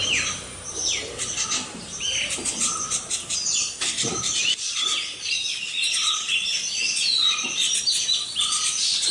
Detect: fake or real real